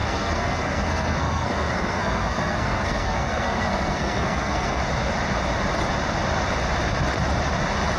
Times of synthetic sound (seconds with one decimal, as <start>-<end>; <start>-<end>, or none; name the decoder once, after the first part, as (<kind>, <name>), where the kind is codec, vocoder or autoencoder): 0.0-4.8 (codec, SNAC)